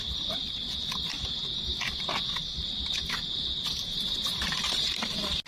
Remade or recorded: recorded